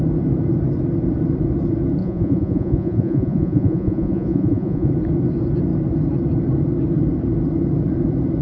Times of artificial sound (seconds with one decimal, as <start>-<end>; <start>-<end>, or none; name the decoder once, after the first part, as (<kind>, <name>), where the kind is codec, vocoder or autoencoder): 2.0-4.9 (vocoder, Vocos)